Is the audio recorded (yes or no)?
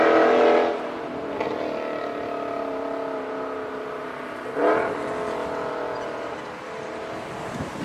yes